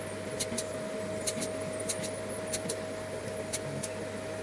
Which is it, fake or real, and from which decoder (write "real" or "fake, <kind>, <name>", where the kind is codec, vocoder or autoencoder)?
real